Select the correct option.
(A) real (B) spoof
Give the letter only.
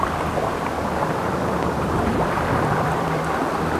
A